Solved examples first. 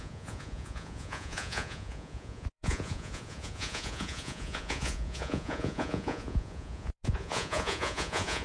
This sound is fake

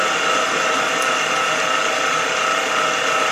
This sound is real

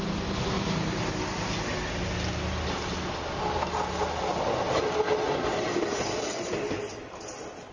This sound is real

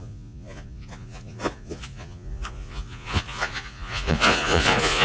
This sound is fake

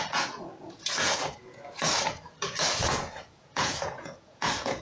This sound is fake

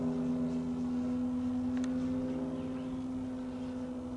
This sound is real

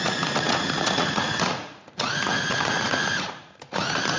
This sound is fake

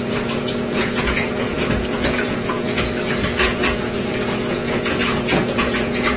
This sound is fake